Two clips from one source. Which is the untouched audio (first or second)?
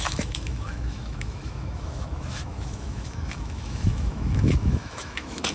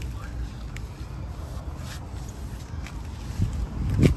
second